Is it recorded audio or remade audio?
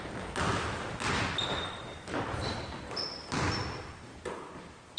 recorded